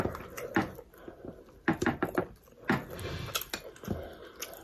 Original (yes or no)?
yes